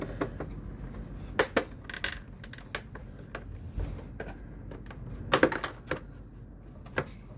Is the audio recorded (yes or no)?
yes